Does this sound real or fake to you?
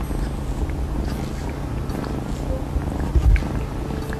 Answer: real